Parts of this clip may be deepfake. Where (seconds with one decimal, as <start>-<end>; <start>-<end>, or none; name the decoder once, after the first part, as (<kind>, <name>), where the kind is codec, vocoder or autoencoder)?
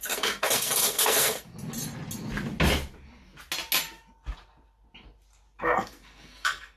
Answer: 0.0-1.5 (codec, SNAC); 5.6-6.8